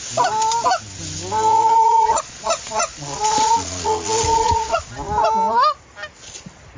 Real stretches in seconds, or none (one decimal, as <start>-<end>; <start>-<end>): 0.0-1.5; 4.9-6.8